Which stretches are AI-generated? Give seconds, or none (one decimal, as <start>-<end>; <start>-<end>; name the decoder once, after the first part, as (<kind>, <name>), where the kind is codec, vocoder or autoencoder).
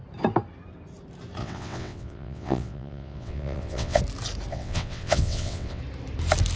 1.4-4.0 (vocoder, WaveNeXt); 4.5-5.8